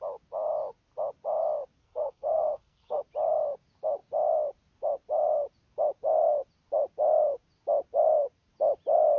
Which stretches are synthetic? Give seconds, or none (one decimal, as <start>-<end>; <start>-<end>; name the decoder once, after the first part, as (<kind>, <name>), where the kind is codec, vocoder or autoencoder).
1.8-3.0 (codec, SNAC)